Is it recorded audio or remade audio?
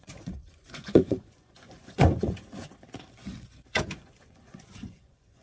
remade